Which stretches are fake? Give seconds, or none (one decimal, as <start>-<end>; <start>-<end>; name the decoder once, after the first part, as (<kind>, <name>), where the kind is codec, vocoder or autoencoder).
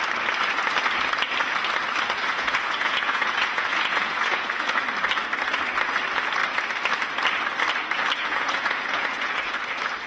2.2-4.8 (vocoder, Vocos); 8.2-9.6